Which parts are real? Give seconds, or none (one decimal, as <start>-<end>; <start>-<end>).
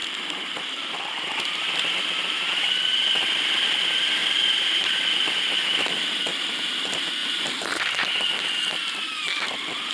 3.2-4.2; 5.6-7.2; 7.8-9.9